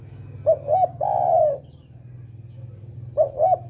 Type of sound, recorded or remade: recorded